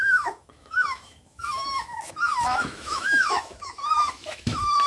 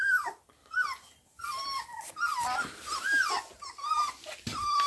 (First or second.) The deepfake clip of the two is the first